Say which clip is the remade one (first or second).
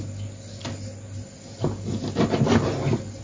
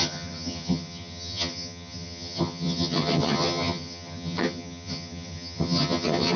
second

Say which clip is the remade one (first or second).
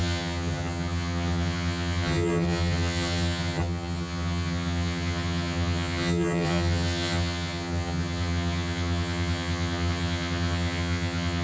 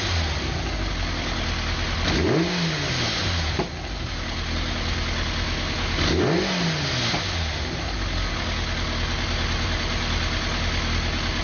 first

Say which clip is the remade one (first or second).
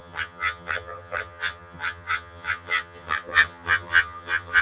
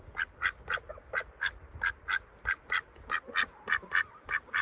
first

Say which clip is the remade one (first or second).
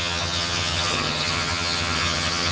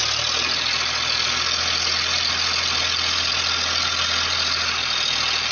first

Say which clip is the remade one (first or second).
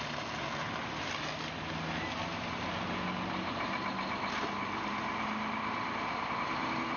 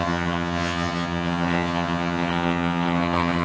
second